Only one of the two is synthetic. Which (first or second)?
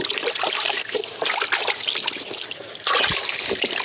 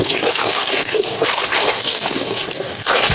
second